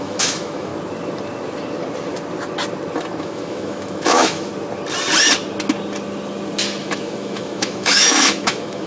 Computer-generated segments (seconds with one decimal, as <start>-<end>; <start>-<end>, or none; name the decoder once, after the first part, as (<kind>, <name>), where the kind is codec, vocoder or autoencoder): 0.0-0.7 (autoencoder, DAC-VAE); 3.2-4.5; 6.8-8.9